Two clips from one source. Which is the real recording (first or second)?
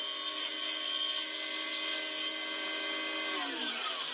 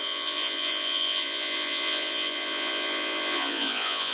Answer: first